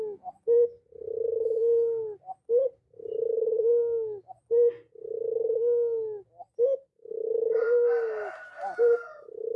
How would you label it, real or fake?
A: real